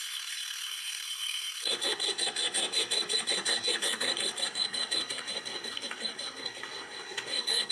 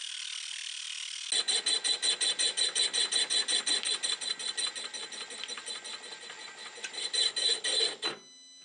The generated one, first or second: first